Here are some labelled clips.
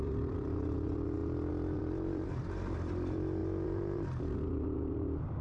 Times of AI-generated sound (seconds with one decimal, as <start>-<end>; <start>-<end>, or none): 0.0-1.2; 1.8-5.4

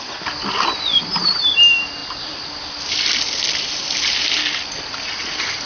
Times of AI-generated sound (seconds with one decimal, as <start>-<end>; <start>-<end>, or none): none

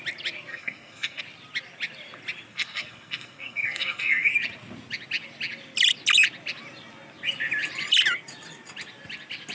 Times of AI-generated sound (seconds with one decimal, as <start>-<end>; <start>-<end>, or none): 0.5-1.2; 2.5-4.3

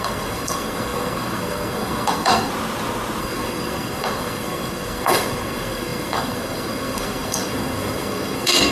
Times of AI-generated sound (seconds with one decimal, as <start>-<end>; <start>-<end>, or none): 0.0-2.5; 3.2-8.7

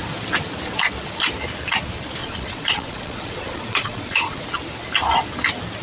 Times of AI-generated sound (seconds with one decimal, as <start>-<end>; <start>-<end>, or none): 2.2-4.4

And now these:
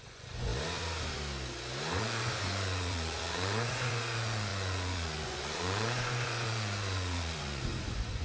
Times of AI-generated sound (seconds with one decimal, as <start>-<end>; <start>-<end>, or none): 0.0-0.5; 2.0-8.2

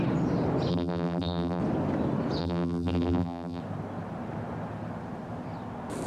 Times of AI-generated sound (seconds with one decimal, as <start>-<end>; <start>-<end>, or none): 0.7-1.6; 2.4-3.6

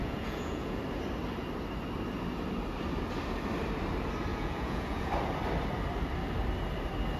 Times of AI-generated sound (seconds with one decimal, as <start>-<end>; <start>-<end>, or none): 0.0-0.8; 4.3-5.1